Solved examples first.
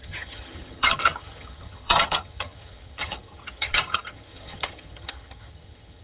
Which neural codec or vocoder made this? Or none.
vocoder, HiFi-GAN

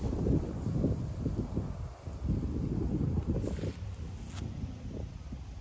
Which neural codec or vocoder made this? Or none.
none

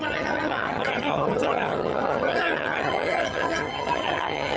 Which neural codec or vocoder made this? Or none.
vocoder, HiFi-GAN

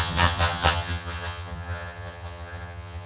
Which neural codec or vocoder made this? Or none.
vocoder, HiFi-GAN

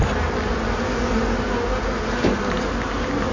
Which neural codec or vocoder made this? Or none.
none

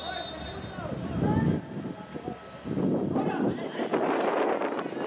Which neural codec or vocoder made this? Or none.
none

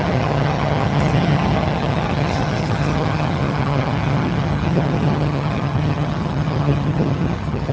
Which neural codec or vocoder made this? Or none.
vocoder, HiFi-GAN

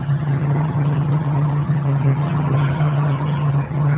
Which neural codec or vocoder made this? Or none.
vocoder, HiFi-GAN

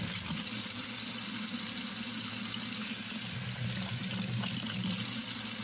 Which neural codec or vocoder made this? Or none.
none